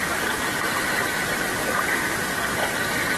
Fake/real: real